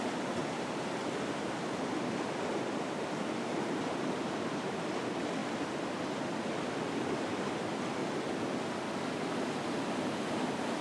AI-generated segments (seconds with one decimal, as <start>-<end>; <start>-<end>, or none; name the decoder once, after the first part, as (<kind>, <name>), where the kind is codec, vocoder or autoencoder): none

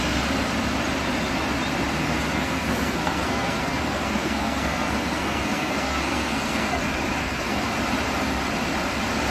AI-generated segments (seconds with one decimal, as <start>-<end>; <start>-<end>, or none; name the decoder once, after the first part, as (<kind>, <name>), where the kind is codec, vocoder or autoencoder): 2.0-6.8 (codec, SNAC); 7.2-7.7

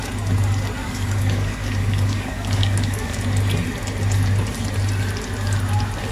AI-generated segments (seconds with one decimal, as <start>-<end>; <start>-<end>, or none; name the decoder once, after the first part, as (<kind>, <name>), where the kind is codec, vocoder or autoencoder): 0.8-3.2 (codec, DAC)

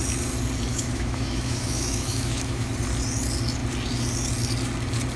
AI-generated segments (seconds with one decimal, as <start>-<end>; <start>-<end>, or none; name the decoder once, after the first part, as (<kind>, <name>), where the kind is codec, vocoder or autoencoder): 0.7-2.7 (autoencoder, DAC-VAE)

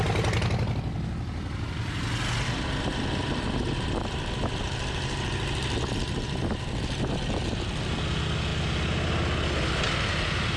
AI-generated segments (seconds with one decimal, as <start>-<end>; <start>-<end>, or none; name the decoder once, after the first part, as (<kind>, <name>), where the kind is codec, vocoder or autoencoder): none

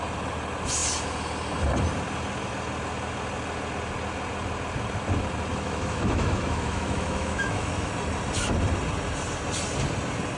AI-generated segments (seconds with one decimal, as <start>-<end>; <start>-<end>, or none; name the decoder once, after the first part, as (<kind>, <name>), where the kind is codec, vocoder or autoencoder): 5.5-7.9 (autoencoder, DAC-VAE)

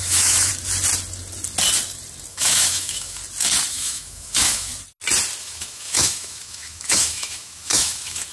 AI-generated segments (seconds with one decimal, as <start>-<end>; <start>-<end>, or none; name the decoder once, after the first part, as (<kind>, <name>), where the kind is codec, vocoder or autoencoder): 0.0-0.5 (autoencoder, DAC-VAE); 2.3-3.2; 3.7-4.7; 5.4-8.3